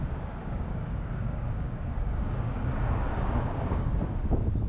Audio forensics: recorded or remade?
remade